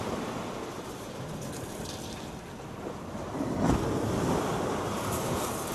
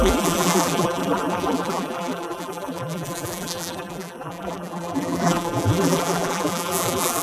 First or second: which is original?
first